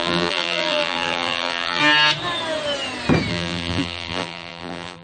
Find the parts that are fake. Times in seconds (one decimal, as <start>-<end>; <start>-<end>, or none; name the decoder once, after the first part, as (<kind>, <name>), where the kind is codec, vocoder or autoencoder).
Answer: 0.0-1.8 (vocoder, BigVGAN v2); 3.3-5.0